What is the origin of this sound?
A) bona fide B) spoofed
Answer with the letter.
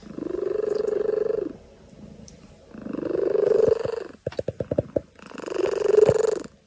A